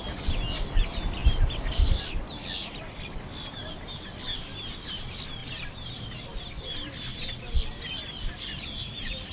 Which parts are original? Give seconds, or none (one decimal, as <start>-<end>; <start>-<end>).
0.0-1.2; 2.0-5.4; 6.0-9.3